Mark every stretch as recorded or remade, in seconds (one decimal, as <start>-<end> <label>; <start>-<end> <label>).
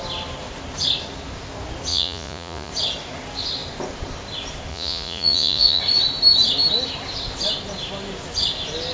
0.0-1.9 recorded; 1.9-2.7 remade; 2.7-4.7 recorded; 4.7-5.8 remade; 5.8-8.9 recorded